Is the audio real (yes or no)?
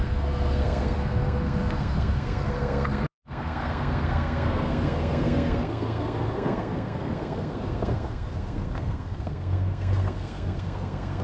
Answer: no